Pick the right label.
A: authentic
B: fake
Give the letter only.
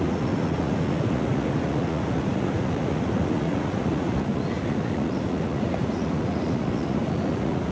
B